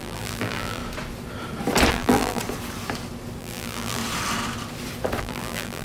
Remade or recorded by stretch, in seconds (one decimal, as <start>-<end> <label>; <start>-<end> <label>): 0.0-0.8 remade; 0.8-1.9 recorded; 1.9-2.4 remade; 2.4-3.4 recorded; 3.4-4.0 remade; 4.0-5.2 recorded; 5.2-5.8 remade